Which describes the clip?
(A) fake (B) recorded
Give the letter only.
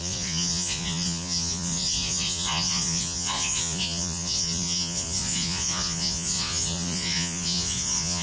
A